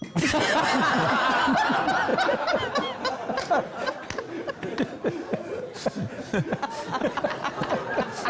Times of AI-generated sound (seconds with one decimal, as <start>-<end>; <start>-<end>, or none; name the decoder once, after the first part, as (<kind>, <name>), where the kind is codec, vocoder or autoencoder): none